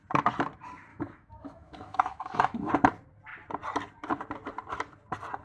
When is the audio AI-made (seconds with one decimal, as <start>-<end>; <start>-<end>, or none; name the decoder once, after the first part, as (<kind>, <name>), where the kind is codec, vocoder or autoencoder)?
0.9-2.7 (autoencoder, DAC-VAE)